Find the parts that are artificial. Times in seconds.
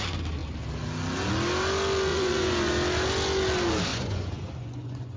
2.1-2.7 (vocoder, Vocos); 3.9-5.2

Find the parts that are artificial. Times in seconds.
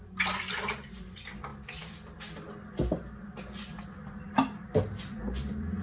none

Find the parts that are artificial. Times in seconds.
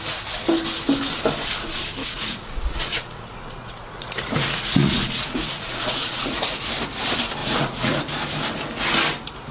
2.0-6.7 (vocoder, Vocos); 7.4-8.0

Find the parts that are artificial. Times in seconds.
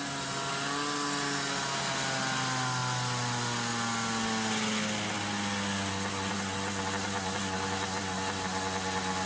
none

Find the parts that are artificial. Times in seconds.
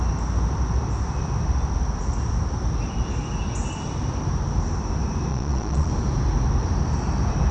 5.3-5.9 (vocoder, Vocos)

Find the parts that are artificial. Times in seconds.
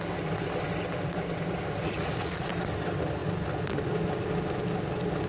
1.8-2.5 (vocoder, Vocos)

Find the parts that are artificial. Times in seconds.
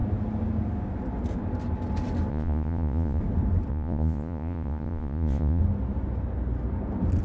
2.3-3.2 (vocoder, Vocos); 3.7-5.6